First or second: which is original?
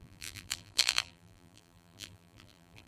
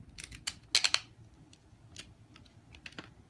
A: second